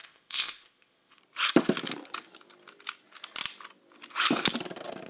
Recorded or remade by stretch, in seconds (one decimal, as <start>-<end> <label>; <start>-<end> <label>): 0.0-1.2 remade; 1.2-5.1 recorded

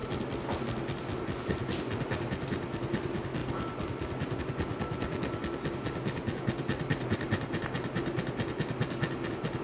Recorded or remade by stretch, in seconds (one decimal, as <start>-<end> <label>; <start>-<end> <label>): 0.0-9.6 recorded

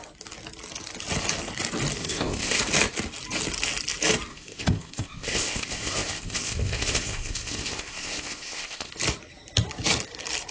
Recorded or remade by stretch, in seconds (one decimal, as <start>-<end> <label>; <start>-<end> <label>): 0.0-2.0 recorded; 2.0-2.6 remade; 2.6-4.3 recorded; 4.3-8.9 remade; 8.9-10.5 recorded

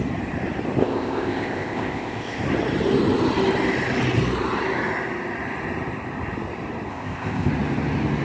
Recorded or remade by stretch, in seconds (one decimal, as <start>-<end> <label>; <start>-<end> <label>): 0.0-0.8 recorded; 0.8-2.4 remade; 2.4-6.9 recorded; 6.9-7.5 remade; 7.5-8.2 recorded

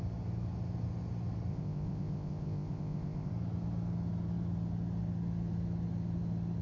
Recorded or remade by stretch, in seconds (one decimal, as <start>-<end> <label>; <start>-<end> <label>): 0.0-1.5 recorded; 1.5-3.3 remade; 3.3-6.6 recorded

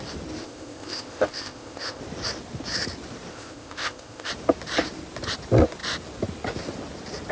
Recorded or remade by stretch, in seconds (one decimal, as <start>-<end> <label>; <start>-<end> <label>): 0.0-0.4 recorded; 0.4-2.0 remade; 2.0-3.3 recorded; 3.3-4.3 remade; 4.3-7.3 recorded